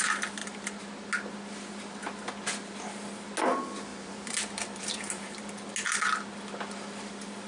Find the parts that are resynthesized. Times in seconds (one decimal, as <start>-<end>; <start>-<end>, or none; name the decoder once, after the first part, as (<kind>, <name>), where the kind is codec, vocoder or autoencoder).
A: 3.9-5.5 (vocoder, BigVGAN v2)